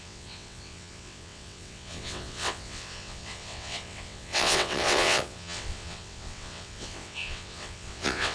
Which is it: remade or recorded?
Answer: remade